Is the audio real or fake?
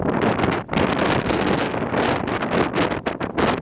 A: real